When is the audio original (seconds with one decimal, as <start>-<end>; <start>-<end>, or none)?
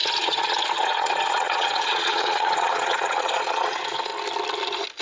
4.1-5.0